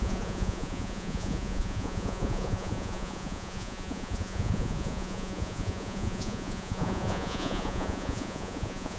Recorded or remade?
remade